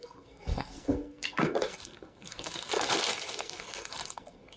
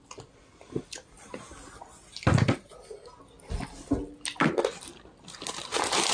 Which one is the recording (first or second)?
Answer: second